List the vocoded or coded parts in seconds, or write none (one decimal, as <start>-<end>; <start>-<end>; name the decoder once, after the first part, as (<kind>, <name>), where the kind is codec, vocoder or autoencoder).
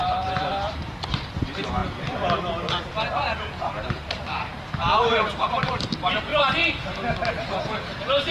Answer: 0.0-1.8 (vocoder, BigVGAN v2); 3.9-6.3; 7.3-8.3